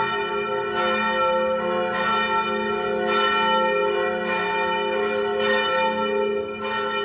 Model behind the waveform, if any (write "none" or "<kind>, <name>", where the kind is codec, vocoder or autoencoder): none